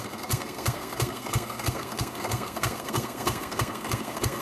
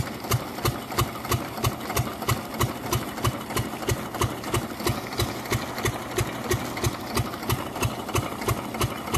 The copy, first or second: first